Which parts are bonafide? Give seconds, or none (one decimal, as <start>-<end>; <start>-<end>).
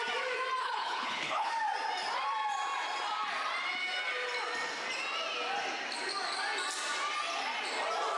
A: 0.0-0.6; 1.5-8.2